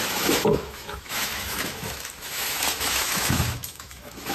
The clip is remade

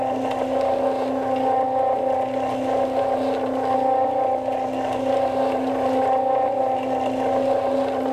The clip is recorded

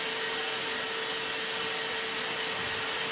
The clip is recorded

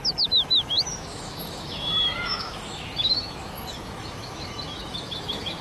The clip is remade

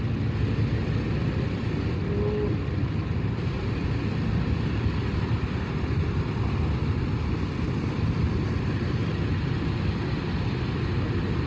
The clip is recorded